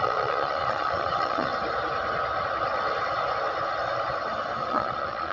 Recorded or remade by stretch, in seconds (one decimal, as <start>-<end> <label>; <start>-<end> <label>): 0.0-1.5 remade; 1.5-4.7 recorded; 4.7-5.3 remade